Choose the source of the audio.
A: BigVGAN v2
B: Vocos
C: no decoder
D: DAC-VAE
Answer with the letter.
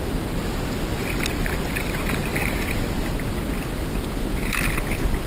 C